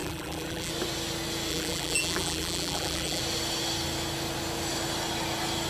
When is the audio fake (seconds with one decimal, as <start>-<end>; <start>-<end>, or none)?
0.0-0.7; 1.5-3.2